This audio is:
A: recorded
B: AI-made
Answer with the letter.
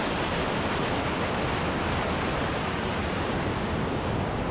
A